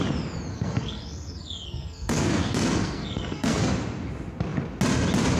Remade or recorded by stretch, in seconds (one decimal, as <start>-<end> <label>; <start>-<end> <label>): 0.0-0.5 recorded; 0.5-3.7 remade; 3.7-5.4 recorded